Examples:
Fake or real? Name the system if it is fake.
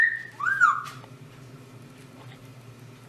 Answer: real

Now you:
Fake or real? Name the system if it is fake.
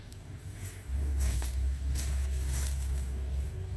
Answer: fake, codec, DAC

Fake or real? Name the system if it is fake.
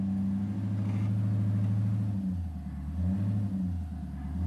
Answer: real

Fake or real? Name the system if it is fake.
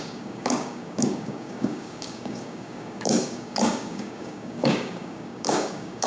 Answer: fake, codec, DAC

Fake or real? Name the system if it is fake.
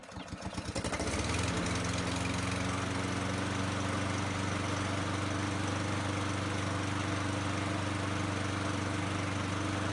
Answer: real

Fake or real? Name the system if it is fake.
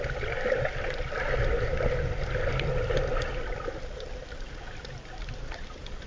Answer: real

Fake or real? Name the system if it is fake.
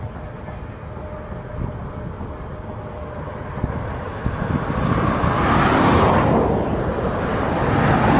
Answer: real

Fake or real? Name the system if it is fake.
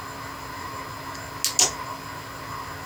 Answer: real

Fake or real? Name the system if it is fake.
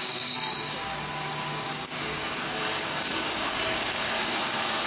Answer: fake, codec, DAC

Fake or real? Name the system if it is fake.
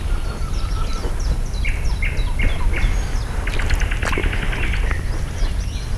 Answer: real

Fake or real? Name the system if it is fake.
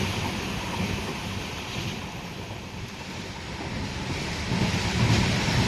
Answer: real